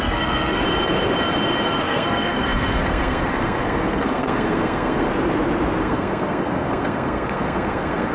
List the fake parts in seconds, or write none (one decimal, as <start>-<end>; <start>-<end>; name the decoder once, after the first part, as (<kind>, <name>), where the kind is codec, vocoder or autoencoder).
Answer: 0.0-0.6 (codec, SNAC); 1.8-5.1; 5.8-8.1